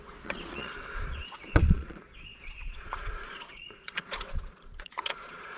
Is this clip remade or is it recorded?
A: remade